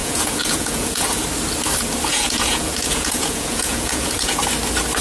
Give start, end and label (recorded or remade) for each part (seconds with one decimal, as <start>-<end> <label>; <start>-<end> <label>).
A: 0.0-1.2 remade; 1.2-2.1 recorded; 2.1-4.4 remade; 4.4-5.0 recorded